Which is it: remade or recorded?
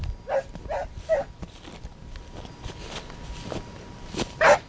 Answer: recorded